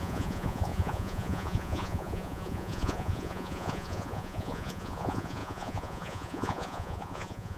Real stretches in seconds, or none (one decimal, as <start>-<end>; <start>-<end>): none

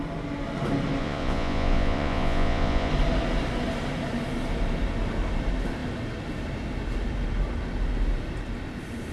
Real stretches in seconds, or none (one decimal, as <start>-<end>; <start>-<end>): 0.0-1.0; 2.9-9.1

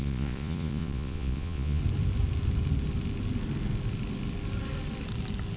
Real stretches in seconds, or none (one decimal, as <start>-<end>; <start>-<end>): 1.8-5.6

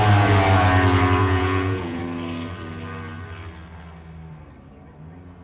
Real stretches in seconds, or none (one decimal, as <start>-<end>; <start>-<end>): 0.0-1.2; 2.0-5.4

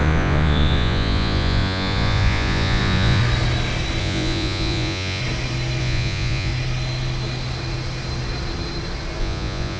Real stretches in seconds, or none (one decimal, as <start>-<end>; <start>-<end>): 3.2-4.0; 5.2-5.8; 6.5-9.2

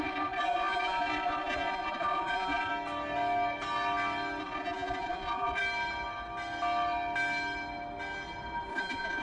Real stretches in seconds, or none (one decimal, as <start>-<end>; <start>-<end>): 2.7-4.4; 5.6-8.7